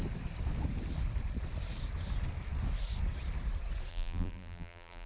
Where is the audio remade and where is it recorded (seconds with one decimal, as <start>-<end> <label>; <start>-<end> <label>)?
0.0-3.9 recorded; 3.9-5.1 remade